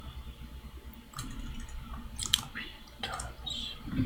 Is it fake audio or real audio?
real